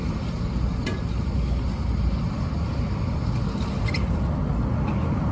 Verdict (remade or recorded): recorded